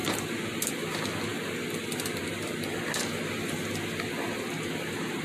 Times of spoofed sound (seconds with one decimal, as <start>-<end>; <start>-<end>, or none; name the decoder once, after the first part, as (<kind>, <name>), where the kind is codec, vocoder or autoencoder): 0.0-0.7 (vocoder, BigVGAN v2); 1.3-3.3